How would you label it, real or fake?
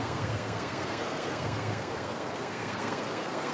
fake